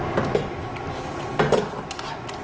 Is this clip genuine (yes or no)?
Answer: yes